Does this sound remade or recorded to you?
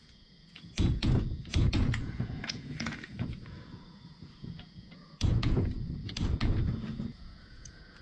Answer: remade